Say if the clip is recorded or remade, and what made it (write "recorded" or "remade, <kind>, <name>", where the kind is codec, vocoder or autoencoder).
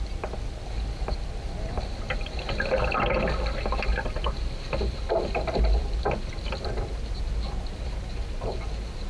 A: recorded